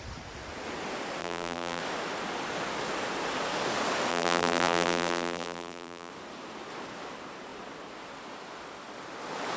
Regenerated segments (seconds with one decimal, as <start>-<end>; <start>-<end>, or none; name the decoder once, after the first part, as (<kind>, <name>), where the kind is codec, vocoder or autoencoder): 1.2-1.8 (vocoder, BigVGAN v2); 4.1-6.1